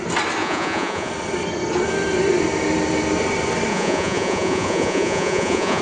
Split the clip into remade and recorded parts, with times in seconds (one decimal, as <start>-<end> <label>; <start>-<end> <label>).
0.0-0.4 recorded; 0.4-1.1 remade; 1.1-3.7 recorded; 3.7-5.8 remade